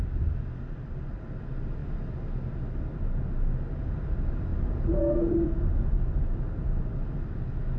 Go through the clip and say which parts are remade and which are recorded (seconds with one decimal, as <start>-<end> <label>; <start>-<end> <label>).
0.0-4.5 recorded; 4.5-5.9 remade; 5.9-7.8 recorded